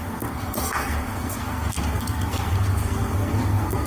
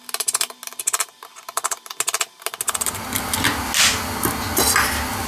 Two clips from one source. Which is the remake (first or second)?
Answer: first